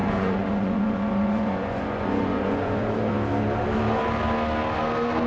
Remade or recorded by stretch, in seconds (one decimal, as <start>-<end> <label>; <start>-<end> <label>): 0.0-3.1 remade; 3.1-5.3 recorded